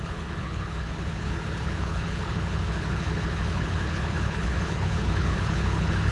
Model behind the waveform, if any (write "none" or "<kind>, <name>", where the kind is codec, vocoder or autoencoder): codec, HILCodec